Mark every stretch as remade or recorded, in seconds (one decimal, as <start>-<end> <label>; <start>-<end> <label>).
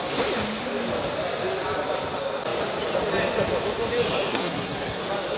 0.0-4.3 recorded; 4.3-5.0 remade; 5.0-5.4 recorded